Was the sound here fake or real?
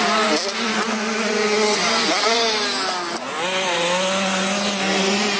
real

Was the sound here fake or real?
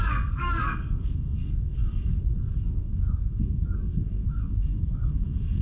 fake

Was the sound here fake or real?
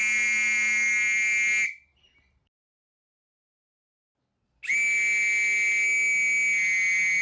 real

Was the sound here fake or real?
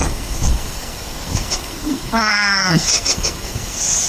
fake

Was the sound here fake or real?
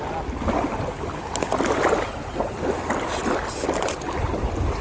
real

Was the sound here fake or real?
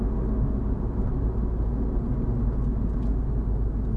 real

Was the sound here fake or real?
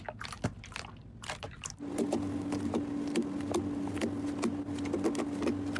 real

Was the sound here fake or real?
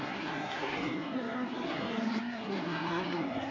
fake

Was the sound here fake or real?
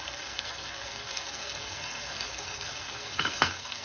fake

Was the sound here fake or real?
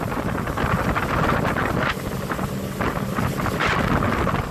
real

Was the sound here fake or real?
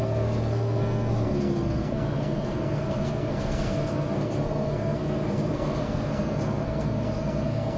fake